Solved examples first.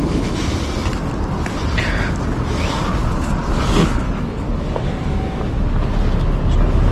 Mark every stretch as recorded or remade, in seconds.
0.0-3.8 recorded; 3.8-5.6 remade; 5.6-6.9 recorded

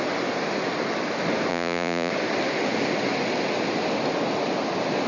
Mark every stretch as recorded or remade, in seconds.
0.0-1.5 recorded; 1.5-2.1 remade; 2.1-5.1 recorded

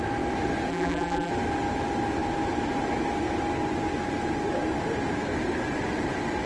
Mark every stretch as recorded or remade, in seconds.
0.0-0.7 recorded; 0.7-1.3 remade; 1.3-6.5 recorded